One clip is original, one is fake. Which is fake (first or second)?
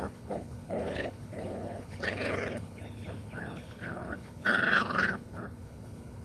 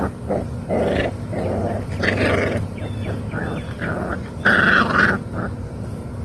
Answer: first